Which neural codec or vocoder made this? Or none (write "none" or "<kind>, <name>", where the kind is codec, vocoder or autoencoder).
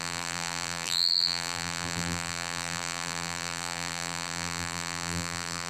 vocoder, BigVGAN v2